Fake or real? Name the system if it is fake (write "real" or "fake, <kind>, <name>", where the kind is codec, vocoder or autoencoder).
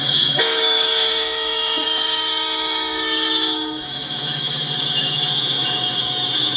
fake, autoencoder, DAC-VAE